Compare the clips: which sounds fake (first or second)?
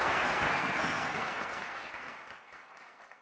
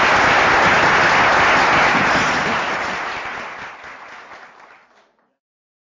first